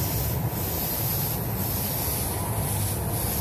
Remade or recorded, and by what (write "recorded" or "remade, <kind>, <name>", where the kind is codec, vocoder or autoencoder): recorded